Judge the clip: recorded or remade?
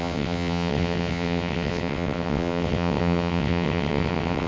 remade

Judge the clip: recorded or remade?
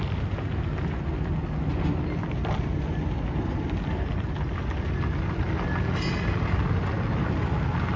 recorded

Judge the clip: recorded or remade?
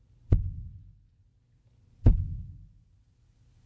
recorded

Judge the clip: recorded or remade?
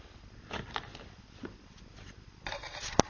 recorded